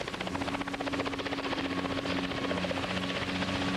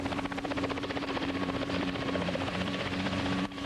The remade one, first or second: second